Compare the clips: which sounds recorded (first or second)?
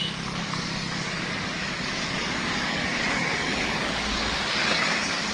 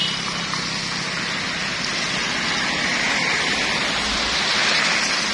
second